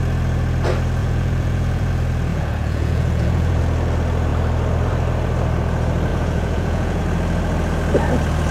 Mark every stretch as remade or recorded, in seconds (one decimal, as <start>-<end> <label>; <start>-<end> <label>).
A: 0.0-1.0 recorded; 1.0-1.9 remade; 1.9-2.3 recorded; 2.3-3.6 remade; 3.6-6.1 recorded; 6.1-7.0 remade; 7.0-8.5 recorded

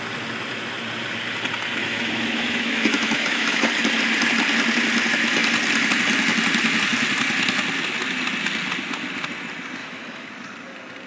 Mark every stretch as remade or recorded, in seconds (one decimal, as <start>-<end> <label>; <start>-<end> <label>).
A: 0.0-1.8 recorded; 1.8-3.7 remade; 3.7-9.8 recorded; 9.8-10.3 remade; 10.3-11.1 recorded

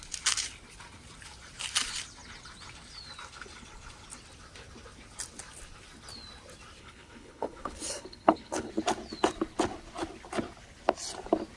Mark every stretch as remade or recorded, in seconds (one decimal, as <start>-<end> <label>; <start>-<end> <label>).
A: 0.0-6.8 recorded; 6.8-8.7 remade; 8.7-11.6 recorded

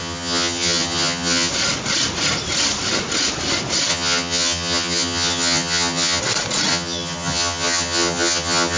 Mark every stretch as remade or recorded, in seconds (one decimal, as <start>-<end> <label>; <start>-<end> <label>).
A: 0.0-1.5 remade; 1.5-3.9 recorded; 3.9-6.2 remade; 6.2-6.7 recorded; 6.7-8.8 remade